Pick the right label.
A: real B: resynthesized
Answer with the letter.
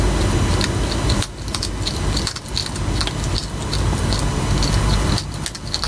A